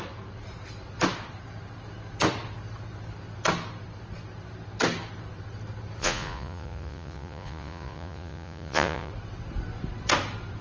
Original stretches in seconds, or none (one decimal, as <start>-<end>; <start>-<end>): 0.0-6.0; 9.1-10.6